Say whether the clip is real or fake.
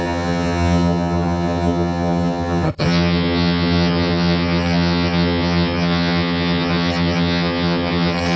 fake